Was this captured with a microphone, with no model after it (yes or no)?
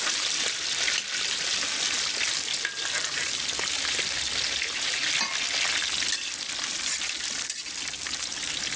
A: yes